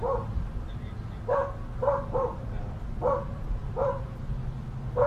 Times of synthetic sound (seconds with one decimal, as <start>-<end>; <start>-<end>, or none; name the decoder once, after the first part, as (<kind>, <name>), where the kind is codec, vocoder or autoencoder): 3.6-4.2 (vocoder, BigVGAN v2)